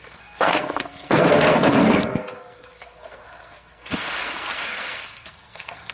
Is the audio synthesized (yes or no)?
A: yes